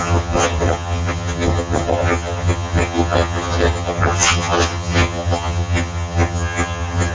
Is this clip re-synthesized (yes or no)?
yes